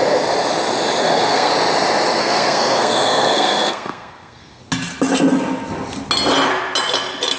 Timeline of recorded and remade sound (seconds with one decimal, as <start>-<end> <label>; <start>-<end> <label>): 0.0-1.0 recorded; 1.0-1.5 remade; 1.5-2.2 recorded; 2.2-4.6 remade; 4.6-7.4 recorded